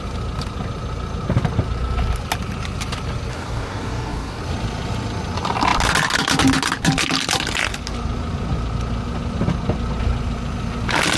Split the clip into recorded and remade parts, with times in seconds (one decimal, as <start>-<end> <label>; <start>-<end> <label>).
0.0-3.3 recorded; 3.3-4.4 remade; 4.4-11.2 recorded